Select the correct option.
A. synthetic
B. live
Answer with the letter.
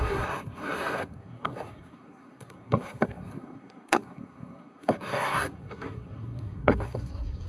A